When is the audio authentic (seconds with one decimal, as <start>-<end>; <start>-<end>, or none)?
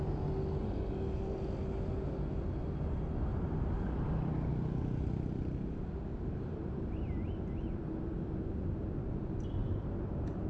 0.0-3.3; 4.5-9.6